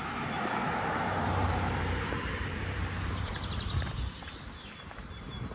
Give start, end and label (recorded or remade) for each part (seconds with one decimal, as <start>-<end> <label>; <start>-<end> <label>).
0.0-0.6 recorded; 0.6-3.9 remade; 3.9-5.5 recorded